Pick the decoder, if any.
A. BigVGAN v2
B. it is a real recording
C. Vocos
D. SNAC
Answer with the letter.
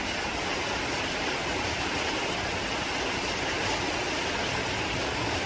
B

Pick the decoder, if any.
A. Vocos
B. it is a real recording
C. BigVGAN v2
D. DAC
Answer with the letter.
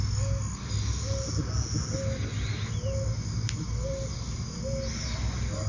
B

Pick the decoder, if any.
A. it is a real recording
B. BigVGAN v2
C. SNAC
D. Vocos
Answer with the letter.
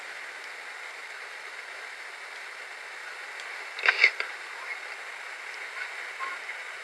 A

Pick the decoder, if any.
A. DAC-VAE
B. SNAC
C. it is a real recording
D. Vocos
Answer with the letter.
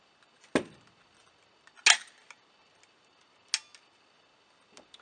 C